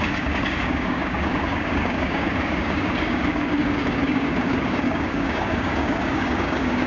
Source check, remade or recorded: remade